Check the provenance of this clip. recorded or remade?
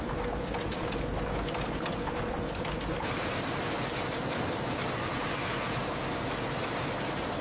recorded